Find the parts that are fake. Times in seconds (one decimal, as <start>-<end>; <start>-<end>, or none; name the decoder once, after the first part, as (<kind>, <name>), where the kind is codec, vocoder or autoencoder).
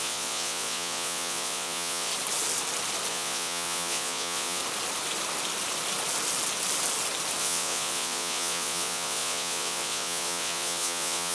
0.0-2.1 (vocoder, Vocos); 3.1-4.6; 7.4-11.3